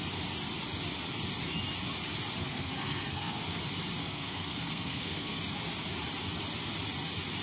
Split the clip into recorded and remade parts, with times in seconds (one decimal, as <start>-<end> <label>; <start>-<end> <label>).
0.0-2.4 recorded; 2.4-3.4 remade; 3.4-4.0 recorded; 4.0-5.4 remade; 5.4-7.4 recorded